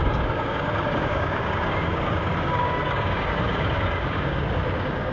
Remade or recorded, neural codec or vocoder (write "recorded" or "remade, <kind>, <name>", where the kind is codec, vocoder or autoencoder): remade, codec, DAC